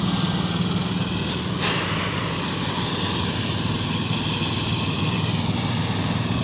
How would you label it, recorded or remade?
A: recorded